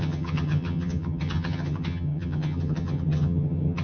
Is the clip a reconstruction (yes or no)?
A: yes